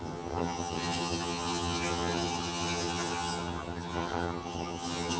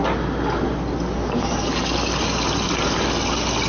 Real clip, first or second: second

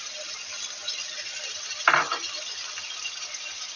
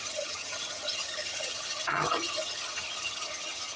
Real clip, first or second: first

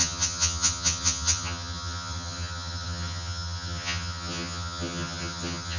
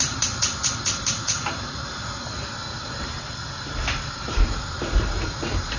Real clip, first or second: second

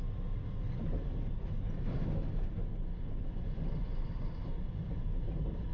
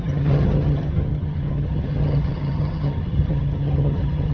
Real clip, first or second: first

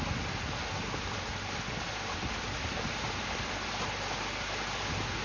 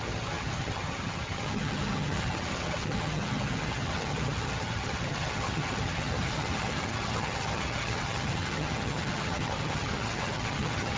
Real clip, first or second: first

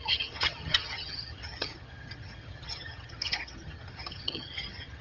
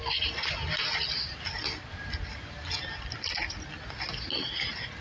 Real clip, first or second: second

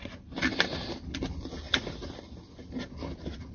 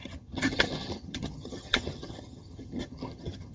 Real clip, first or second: first